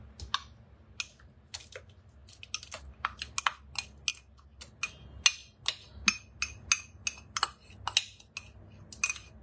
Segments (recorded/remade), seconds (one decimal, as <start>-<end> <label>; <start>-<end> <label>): 0.0-9.4 recorded